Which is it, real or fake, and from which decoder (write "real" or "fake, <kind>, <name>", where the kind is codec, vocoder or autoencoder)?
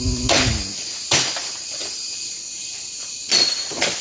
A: real